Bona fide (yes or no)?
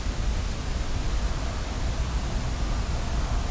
yes